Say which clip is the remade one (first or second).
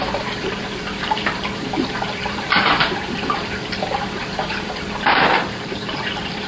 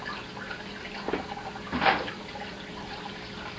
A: first